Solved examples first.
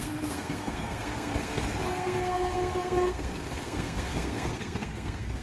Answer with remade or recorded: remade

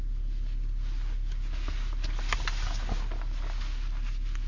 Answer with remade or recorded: recorded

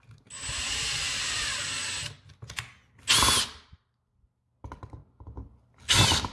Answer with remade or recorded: recorded